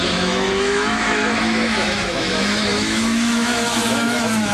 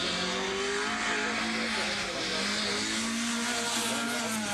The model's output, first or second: first